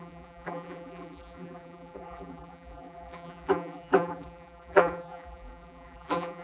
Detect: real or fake fake